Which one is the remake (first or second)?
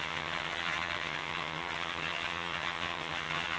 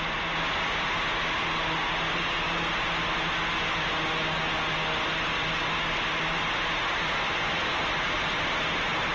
first